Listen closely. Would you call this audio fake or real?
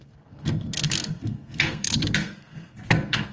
fake